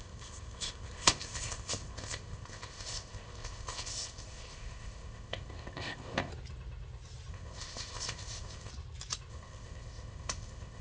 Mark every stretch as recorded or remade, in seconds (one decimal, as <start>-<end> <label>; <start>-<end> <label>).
0.0-6.3 remade; 6.3-7.3 recorded; 7.3-8.7 remade; 8.7-9.3 recorded; 9.3-10.8 remade